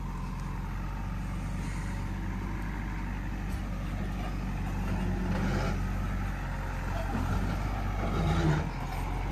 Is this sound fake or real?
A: real